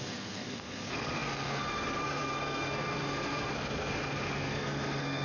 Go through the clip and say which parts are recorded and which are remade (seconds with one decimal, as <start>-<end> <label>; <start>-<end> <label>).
0.0-5.2 remade